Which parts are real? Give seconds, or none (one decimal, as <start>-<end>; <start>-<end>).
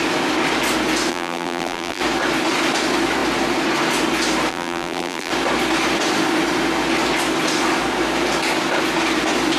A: 0.0-1.1; 2.0-4.5; 5.3-9.6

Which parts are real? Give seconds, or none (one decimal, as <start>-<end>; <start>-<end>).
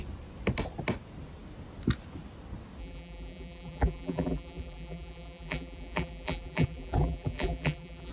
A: 0.0-2.8